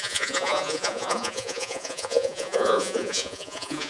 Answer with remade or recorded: remade